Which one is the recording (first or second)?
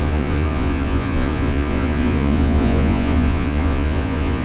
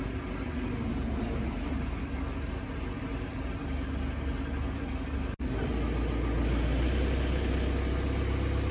second